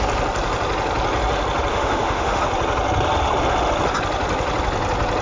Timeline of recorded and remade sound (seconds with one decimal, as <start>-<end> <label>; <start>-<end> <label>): 0.0-1.7 recorded; 1.7-2.4 remade; 2.4-5.2 recorded